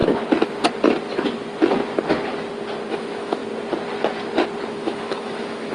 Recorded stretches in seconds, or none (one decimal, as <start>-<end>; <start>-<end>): 0.0-2.9; 3.4-4.7